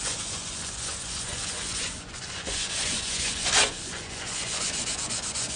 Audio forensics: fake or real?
fake